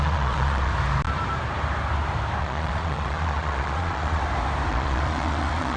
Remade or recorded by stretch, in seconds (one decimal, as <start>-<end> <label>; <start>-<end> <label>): 0.0-0.7 remade; 0.7-2.4 recorded; 2.4-4.2 remade; 4.2-4.7 recorded; 4.7-5.8 remade